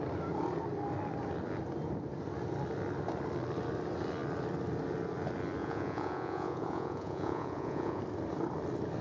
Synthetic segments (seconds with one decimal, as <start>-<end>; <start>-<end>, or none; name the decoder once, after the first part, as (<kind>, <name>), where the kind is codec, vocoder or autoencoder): 5.6-8.0 (vocoder, Vocos)